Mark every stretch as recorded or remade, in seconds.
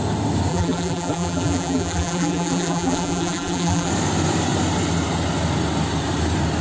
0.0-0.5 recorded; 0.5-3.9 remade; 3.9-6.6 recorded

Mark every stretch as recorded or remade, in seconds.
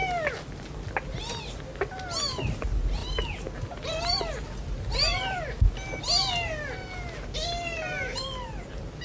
0.0-9.0 recorded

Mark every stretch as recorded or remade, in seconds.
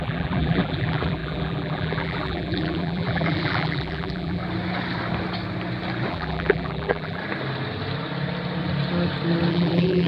0.0-4.4 remade; 4.4-6.1 recorded; 6.1-7.2 remade; 7.2-9.5 recorded; 9.5-10.1 remade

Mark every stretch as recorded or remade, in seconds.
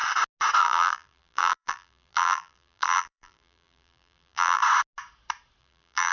0.0-0.6 recorded; 0.6-4.6 remade; 4.6-5.6 recorded; 5.6-6.1 remade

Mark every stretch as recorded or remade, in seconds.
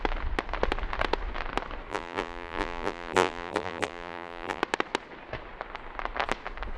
0.0-1.9 recorded; 1.9-4.6 remade; 4.6-6.8 recorded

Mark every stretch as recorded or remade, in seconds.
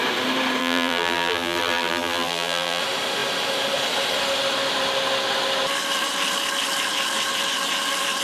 0.0-0.6 recorded; 0.6-2.8 remade; 2.8-8.2 recorded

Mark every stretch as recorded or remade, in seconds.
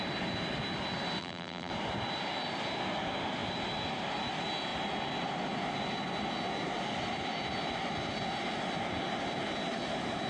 0.0-1.2 recorded; 1.2-1.7 remade; 1.7-10.3 recorded